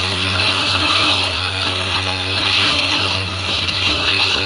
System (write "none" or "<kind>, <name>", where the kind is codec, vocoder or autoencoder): codec, SNAC